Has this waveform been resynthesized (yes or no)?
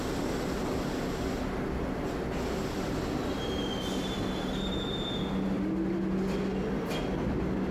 no